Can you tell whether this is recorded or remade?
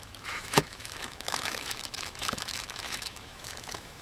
remade